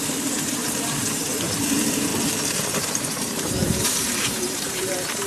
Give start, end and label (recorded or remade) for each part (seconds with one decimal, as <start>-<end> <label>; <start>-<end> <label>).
0.0-2.1 remade; 2.1-2.7 recorded; 2.7-5.3 remade